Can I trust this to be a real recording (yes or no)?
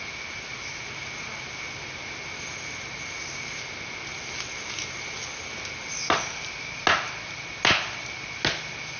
yes